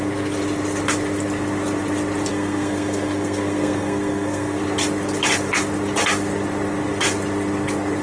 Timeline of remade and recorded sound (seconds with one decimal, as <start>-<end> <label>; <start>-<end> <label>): 0.0-2.3 recorded; 2.3-4.6 remade; 4.6-8.0 recorded